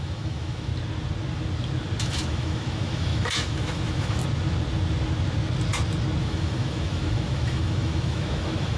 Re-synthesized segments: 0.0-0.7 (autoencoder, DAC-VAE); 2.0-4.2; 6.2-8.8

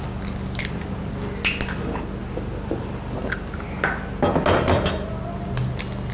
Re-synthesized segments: none

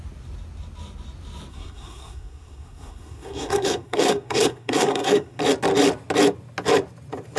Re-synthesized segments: 1.5-5.4 (codec, SNAC)

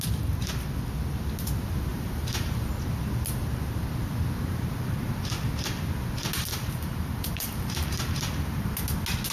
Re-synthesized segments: 1.9-2.7 (vocoder, BigVGAN v2); 6.5-8.7